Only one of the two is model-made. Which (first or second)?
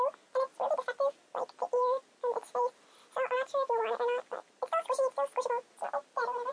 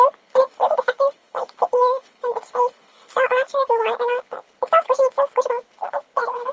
second